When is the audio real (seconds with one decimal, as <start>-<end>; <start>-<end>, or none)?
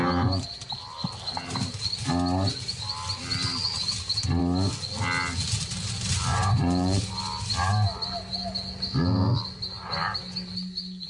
0.0-6.3; 7.0-11.1